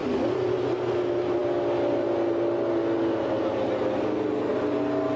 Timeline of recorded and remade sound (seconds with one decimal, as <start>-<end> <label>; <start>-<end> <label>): 0.0-0.5 remade; 0.5-5.2 recorded